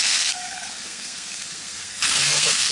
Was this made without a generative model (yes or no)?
no